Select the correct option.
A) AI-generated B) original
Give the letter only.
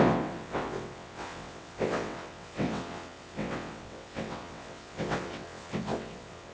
A